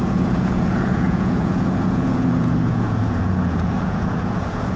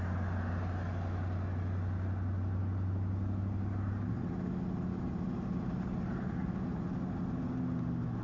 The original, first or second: second